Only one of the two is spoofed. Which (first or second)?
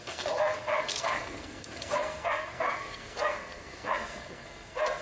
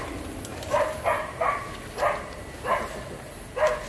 first